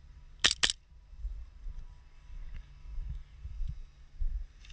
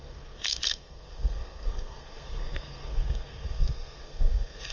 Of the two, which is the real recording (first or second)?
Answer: first